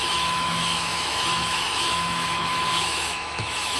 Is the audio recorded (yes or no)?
no